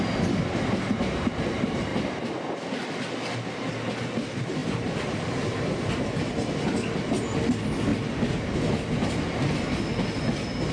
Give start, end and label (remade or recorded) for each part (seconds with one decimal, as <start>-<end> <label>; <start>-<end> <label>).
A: 0.0-4.6 recorded; 4.6-5.9 remade; 5.9-10.7 recorded

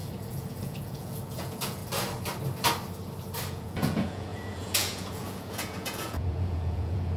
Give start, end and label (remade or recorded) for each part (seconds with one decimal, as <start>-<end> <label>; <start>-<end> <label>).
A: 0.0-1.8 remade; 1.8-3.5 recorded; 3.5-7.2 remade

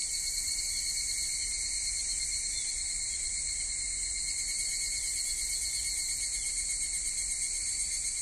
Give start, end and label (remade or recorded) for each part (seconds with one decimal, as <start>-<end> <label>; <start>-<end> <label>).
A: 0.0-0.7 remade; 0.7-8.2 recorded

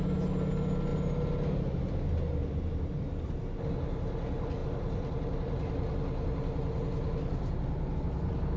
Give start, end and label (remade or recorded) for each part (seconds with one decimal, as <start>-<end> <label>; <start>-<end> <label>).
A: 0.0-8.6 recorded

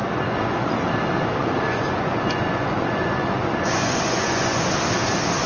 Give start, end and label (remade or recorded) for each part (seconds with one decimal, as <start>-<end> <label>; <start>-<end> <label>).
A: 0.0-0.9 remade; 0.9-1.4 recorded; 1.4-4.7 remade; 4.7-5.5 recorded

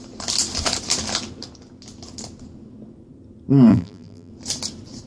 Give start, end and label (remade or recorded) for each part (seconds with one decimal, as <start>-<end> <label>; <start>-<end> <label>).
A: 0.0-3.7 recorded; 3.7-4.3 remade; 4.3-5.1 recorded